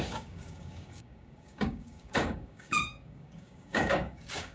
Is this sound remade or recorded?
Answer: remade